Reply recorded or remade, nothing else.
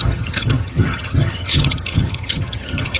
remade